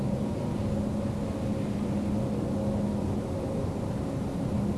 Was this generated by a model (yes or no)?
no